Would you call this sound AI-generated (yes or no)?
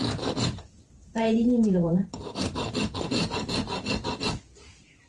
yes